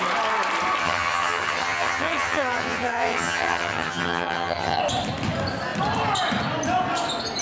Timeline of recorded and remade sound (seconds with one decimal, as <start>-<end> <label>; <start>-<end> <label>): 0.0-0.8 recorded; 0.8-4.8 remade; 4.8-7.4 recorded